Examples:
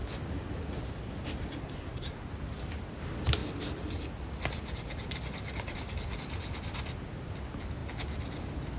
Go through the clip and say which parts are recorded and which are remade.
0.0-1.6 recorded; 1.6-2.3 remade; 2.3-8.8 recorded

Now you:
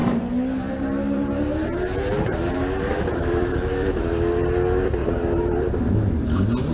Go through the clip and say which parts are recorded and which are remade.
0.0-4.0 remade; 4.0-5.0 recorded; 5.0-5.8 remade; 5.8-6.7 recorded

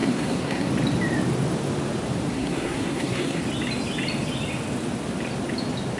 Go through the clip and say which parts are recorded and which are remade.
0.0-0.7 remade; 0.7-2.3 recorded; 2.3-3.4 remade; 3.4-6.0 recorded

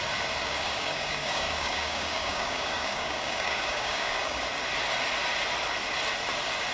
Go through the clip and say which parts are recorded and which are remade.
0.0-0.4 recorded; 0.4-4.4 remade; 4.4-6.7 recorded

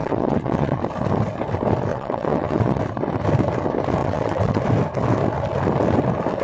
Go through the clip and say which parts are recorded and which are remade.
0.0-0.8 remade; 0.8-1.9 recorded; 1.9-2.8 remade; 2.8-4.0 recorded; 4.0-4.6 remade; 4.6-6.4 recorded